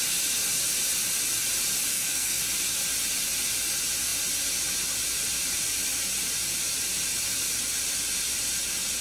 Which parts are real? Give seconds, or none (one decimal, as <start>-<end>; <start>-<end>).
0.0-1.9; 2.4-9.0